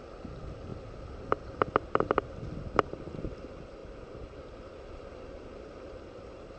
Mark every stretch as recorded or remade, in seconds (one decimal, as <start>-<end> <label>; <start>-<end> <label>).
0.0-6.6 recorded